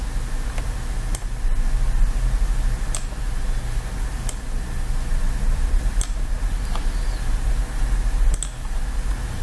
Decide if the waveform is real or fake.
real